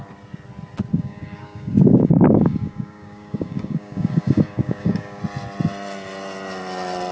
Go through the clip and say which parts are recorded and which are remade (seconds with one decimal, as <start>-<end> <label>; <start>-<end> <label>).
0.0-0.9 recorded; 0.9-5.2 remade; 5.2-7.1 recorded